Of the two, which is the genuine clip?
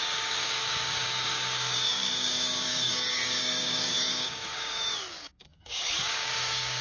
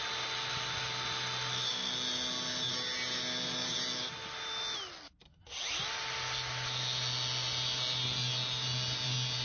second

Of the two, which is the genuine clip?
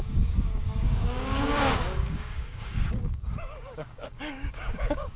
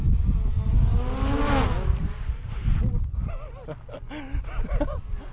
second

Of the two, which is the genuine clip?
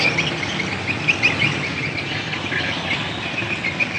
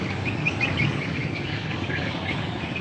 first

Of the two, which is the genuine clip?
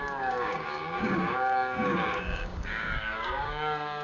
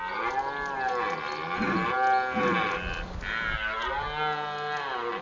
second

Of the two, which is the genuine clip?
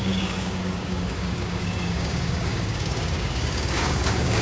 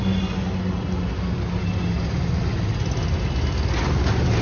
second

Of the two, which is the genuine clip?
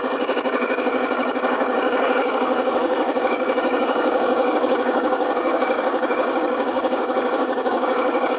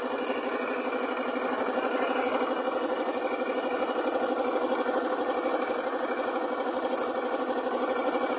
second